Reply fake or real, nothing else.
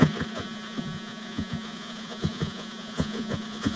fake